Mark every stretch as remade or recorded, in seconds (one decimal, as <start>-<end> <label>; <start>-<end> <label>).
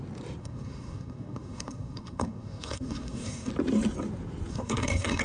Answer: 0.0-0.4 recorded; 0.4-3.5 remade; 3.5-4.5 recorded; 4.5-5.2 remade